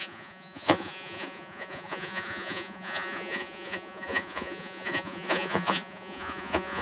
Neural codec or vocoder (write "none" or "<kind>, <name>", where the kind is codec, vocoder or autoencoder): vocoder, Vocos